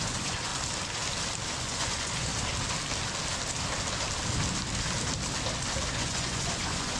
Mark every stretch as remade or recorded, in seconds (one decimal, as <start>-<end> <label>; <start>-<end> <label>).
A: 0.0-0.5 remade; 0.5-1.6 recorded; 1.6-2.3 remade; 2.3-5.9 recorded; 5.9-7.0 remade